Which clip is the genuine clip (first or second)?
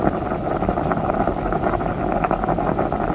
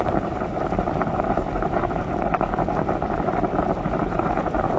first